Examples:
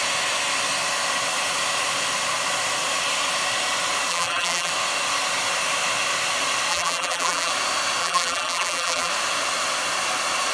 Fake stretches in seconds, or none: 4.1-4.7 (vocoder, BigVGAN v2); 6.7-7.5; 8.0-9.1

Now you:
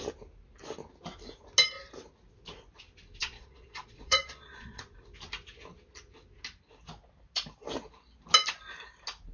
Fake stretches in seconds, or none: 3.2-4.8 (vocoder, Vocos)